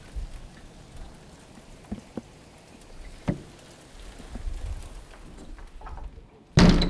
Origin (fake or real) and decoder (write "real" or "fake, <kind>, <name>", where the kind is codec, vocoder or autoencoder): real